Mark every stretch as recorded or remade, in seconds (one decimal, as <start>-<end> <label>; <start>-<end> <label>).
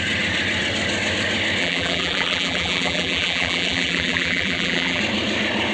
0.0-1.6 recorded; 1.6-5.0 remade; 5.0-5.7 recorded